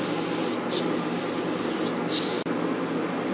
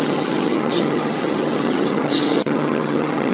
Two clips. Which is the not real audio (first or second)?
second